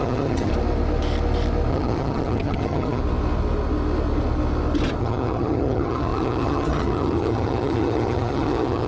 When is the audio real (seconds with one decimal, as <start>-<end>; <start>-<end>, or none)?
0.5-1.7; 3.0-5.0